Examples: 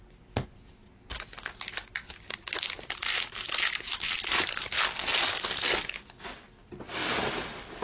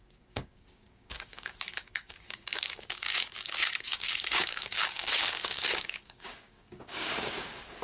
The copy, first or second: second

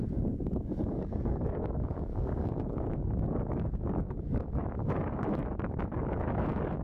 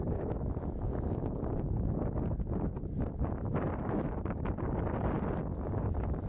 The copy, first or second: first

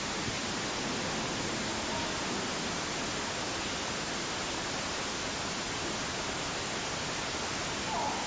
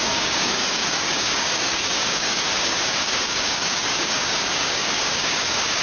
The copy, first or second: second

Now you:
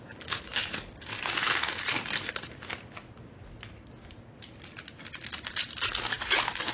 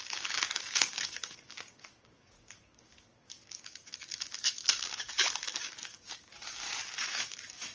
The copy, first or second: second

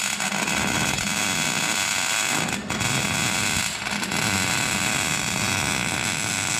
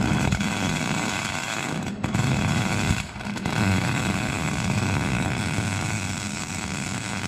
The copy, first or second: second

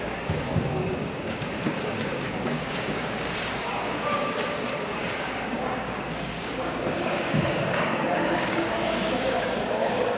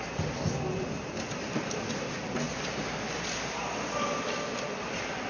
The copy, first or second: first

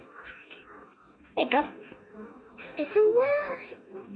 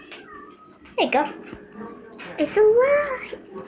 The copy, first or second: first